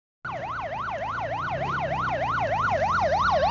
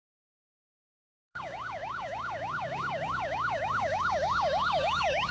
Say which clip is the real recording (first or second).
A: first